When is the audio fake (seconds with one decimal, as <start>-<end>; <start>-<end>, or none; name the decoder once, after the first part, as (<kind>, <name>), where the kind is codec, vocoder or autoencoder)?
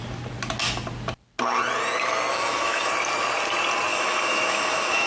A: 2.3-2.9 (autoencoder, DAC-VAE); 3.9-5.1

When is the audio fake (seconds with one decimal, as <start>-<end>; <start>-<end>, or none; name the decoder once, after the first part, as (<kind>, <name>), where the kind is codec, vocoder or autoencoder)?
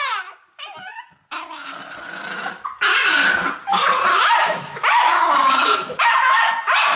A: 4.1-6.5 (autoencoder, DAC-VAE)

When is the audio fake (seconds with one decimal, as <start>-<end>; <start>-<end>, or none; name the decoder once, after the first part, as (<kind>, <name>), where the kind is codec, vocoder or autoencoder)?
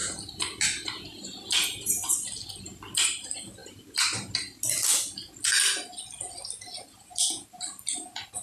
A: none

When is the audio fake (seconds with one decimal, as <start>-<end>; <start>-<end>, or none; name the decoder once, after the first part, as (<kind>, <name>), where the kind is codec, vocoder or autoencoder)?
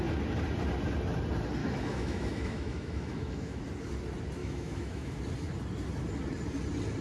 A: 1.6-3.6 (autoencoder, DAC-VAE); 4.4-5.2